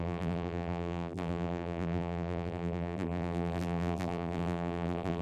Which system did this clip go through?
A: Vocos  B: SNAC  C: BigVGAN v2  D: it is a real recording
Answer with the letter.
C